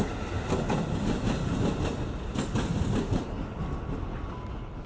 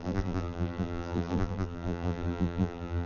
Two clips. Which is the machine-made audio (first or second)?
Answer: second